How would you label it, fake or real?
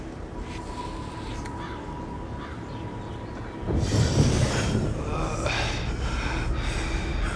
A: real